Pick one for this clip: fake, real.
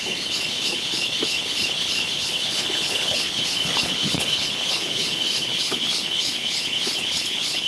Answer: fake